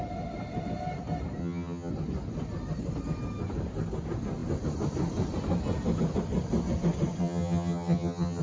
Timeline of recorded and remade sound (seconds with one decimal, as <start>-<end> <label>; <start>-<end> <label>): 0.0-1.4 recorded; 1.4-1.9 remade; 1.9-7.2 recorded; 7.2-8.4 remade